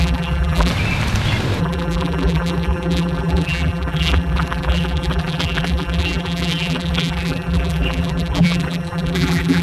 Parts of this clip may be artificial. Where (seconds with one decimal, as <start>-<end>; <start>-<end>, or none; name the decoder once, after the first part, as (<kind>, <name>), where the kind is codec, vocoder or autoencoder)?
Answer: 0.0-0.7 (vocoder, BigVGAN v2); 1.6-9.6